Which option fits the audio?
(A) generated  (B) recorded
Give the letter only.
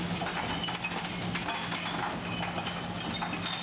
B